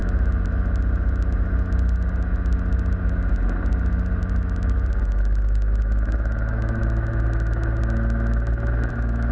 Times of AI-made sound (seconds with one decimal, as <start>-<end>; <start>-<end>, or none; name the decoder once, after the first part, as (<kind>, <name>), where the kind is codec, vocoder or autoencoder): 5.0-6.8 (autoencoder, DAC-VAE); 8.9-9.3